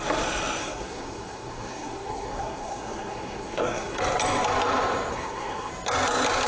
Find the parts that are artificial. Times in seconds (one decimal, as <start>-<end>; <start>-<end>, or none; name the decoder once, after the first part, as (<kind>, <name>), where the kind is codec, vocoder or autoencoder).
0.6-4.0 (codec, SNAC); 5.1-5.7